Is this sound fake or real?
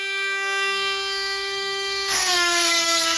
fake